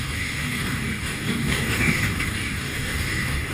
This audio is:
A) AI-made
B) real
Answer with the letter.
A